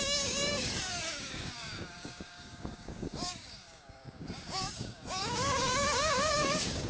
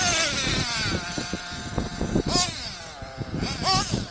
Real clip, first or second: second